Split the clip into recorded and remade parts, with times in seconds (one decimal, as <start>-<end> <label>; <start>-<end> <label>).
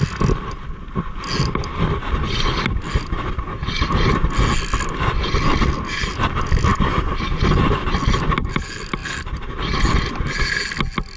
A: 0.0-11.2 recorded